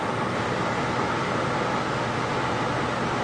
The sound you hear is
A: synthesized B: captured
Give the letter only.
B